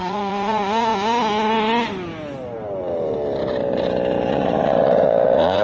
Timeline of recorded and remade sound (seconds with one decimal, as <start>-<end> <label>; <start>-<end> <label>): 0.0-0.9 remade; 0.9-4.3 recorded; 4.3-5.6 remade